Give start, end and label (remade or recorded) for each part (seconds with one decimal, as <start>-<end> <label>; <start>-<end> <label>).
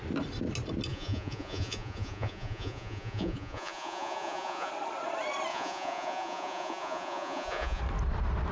0.0-0.9 recorded; 0.9-4.7 remade; 4.7-5.5 recorded; 5.5-7.8 remade; 7.8-8.5 recorded